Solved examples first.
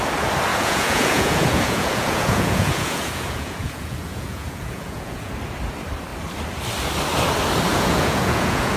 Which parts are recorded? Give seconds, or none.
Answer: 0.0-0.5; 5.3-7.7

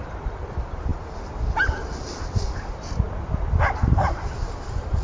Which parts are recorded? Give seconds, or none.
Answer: 0.9-3.9

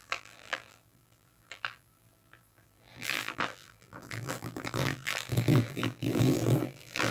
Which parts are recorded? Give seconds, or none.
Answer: none